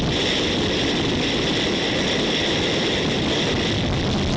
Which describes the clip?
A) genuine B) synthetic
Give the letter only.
A